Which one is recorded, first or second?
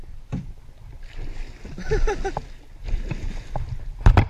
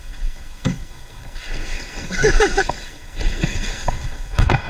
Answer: first